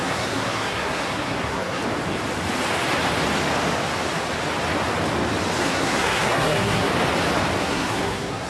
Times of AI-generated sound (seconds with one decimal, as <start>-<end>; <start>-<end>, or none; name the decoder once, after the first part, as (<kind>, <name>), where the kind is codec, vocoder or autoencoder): 0.0-1.8 (codec, SNAC); 5.6-6.9; 7.6-8.5